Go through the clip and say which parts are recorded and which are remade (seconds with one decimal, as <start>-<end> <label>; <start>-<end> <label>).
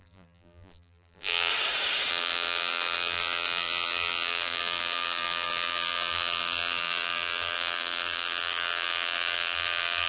0.0-1.5 remade; 1.5-2.1 recorded; 2.1-10.1 remade